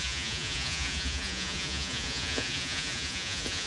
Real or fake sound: fake